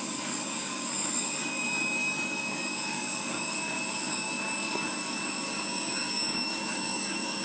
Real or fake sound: fake